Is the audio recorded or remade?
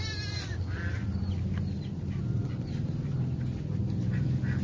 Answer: recorded